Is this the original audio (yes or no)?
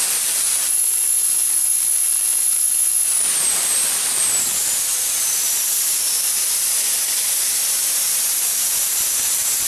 no